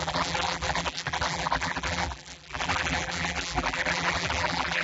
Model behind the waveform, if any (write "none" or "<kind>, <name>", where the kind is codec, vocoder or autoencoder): vocoder, BigVGAN v2